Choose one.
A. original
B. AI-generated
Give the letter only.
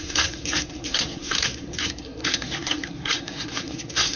B